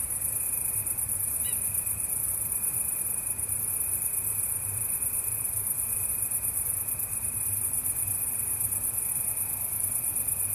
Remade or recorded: remade